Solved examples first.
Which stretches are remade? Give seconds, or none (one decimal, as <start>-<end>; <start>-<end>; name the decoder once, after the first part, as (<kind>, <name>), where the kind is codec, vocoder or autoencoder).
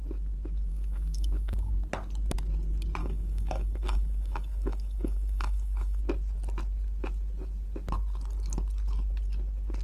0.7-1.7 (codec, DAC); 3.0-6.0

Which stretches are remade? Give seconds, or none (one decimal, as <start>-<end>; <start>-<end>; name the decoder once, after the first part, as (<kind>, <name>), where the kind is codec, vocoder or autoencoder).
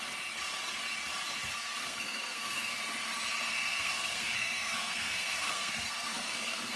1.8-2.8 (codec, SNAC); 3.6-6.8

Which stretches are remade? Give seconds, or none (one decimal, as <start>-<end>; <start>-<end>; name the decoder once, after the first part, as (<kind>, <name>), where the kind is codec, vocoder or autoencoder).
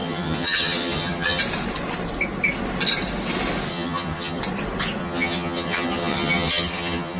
0.0-1.4 (vocoder, HiFi-GAN); 3.7-4.4; 5.0-7.2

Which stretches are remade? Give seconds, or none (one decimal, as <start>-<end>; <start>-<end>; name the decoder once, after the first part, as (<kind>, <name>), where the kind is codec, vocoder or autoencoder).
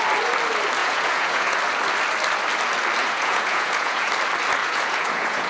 0.8-1.6 (vocoder, Vocos); 3.0-4.1; 4.6-5.5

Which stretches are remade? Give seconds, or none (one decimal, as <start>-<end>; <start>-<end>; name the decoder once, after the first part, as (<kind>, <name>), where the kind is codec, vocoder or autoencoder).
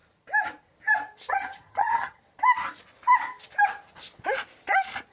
1.3-2.2 (vocoder, HiFi-GAN)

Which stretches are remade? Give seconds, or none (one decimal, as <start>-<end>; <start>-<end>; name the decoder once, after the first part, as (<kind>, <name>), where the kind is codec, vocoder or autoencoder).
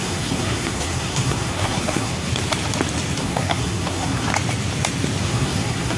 0.0-2.3 (codec, SNAC); 3.2-4.3; 5.2-6.0